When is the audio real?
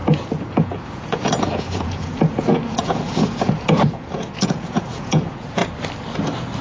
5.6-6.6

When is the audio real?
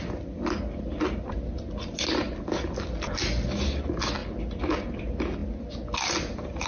0.0-6.7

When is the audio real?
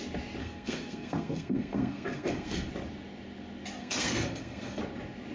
0.0-0.4; 2.7-3.8; 4.8-5.3